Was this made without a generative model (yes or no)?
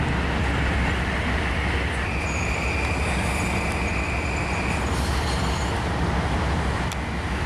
yes